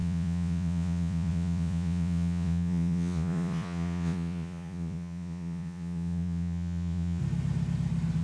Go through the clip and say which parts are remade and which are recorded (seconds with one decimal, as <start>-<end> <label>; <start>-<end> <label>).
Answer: 0.0-7.2 remade; 7.2-8.2 recorded